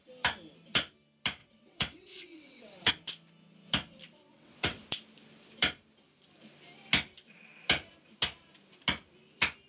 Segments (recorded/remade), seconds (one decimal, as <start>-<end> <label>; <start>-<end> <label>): 0.0-1.4 recorded; 1.4-2.9 remade; 2.9-4.3 recorded; 4.3-4.8 remade; 4.8-9.7 recorded